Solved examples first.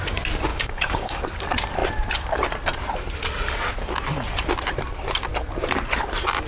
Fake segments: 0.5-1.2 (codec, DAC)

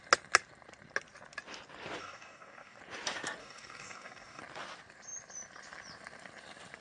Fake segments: 2.0-2.8 (codec, DAC); 3.4-4.4

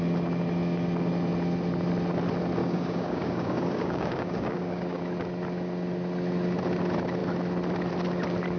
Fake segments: 2.6-5.0 (codec, DAC)

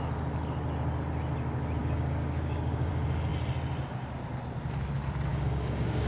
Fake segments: 1.8-2.9 (codec, DAC); 5.3-6.1

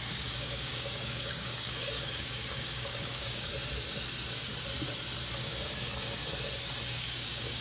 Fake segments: 0.0-3.5 (codec, DAC); 5.4-6.2; 6.9-7.6

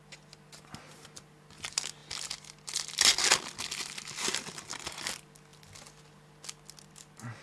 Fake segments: none